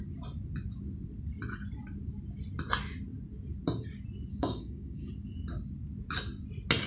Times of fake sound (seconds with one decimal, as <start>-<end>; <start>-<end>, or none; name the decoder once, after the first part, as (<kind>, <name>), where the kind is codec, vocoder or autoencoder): 4.3-5.1 (codec, DAC)